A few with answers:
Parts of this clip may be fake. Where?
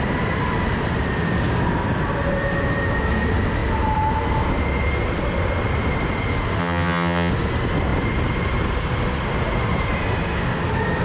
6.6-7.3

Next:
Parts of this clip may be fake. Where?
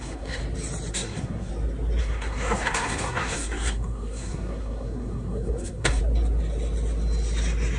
0.0-0.4; 0.9-1.5; 2.0-6.0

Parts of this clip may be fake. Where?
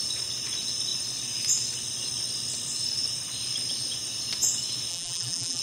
4.9-5.6